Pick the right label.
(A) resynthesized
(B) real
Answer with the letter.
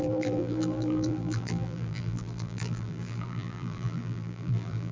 A